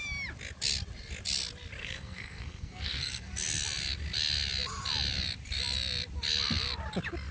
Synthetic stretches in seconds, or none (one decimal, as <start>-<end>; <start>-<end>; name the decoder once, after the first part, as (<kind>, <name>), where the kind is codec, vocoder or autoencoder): 1.8-3.3 (codec, SNAC)